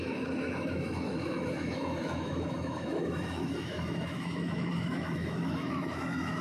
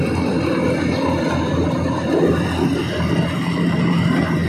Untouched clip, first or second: second